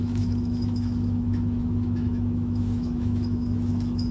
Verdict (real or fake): fake